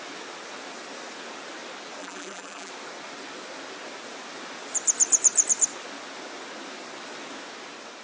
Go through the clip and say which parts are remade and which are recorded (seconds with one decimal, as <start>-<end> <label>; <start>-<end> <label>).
0.0-2.0 recorded; 2.0-2.7 remade; 2.7-8.0 recorded